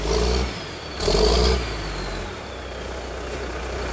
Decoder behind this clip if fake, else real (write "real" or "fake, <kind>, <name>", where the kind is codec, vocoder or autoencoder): real